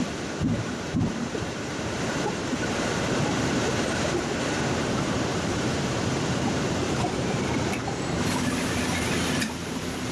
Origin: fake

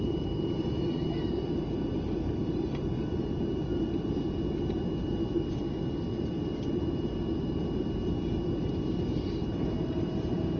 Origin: fake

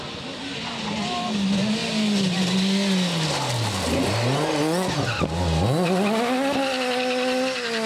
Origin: real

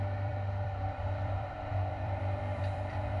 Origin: fake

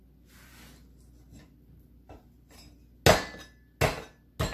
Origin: real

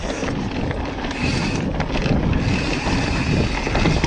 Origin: real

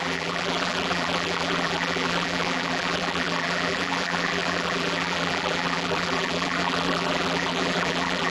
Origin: fake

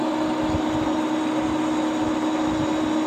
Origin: real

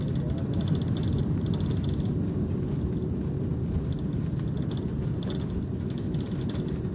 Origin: real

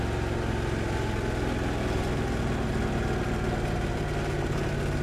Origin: real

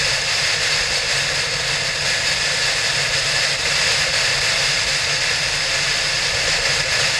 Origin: real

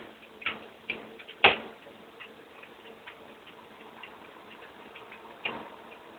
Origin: fake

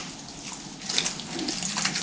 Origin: real